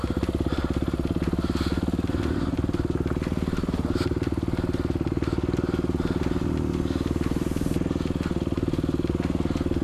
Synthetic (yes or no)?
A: no